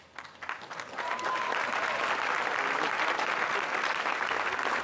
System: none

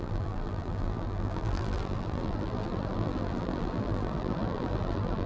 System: vocoder, BigVGAN v2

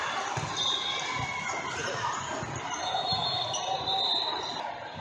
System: none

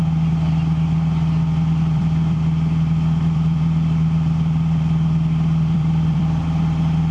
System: vocoder, BigVGAN v2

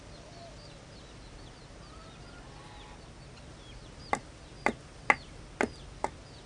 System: none